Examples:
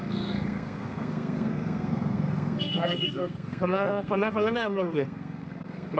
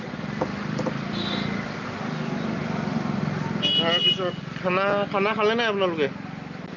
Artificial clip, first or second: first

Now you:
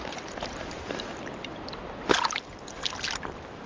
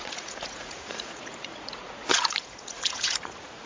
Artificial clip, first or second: second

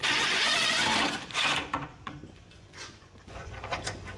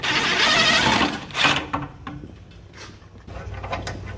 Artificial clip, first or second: first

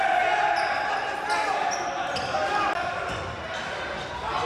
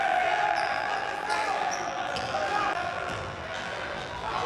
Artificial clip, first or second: second